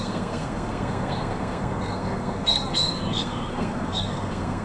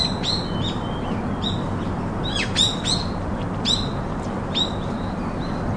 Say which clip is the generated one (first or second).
first